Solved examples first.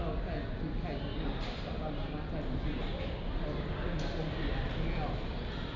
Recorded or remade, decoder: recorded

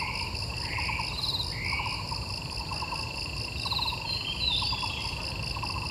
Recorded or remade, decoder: recorded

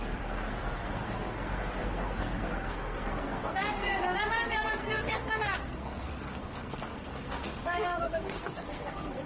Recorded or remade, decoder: remade, codec, SNAC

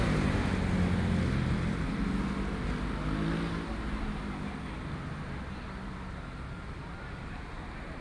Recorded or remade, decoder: recorded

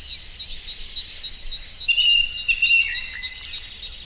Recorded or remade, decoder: recorded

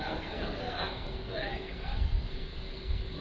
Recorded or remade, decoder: remade, codec, SNAC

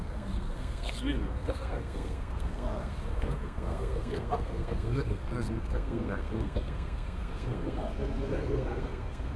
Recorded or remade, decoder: remade, codec, SNAC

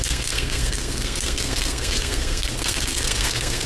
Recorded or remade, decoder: remade, codec, SNAC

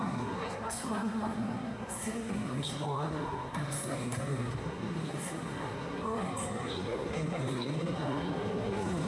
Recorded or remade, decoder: remade, codec, SNAC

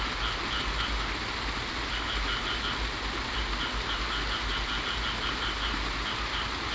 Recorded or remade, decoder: recorded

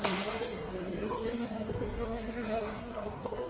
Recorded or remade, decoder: remade, codec, SNAC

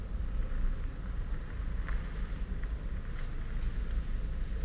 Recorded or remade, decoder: recorded